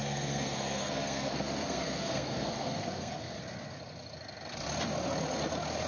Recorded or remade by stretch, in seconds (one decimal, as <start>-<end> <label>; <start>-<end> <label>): 0.0-3.4 remade; 3.4-5.9 recorded